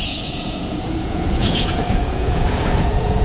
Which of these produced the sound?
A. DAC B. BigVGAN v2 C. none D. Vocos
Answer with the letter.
D